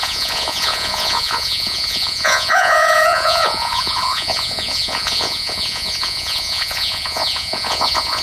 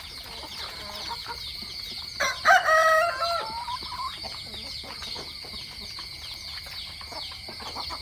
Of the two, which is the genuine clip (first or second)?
second